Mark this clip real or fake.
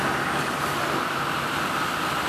real